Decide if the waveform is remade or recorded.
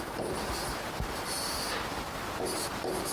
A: remade